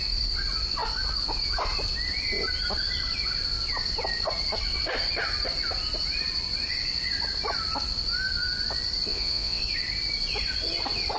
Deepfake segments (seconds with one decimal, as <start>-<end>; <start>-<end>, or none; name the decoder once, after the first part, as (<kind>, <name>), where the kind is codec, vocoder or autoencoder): 9.1-9.6 (vocoder, Vocos)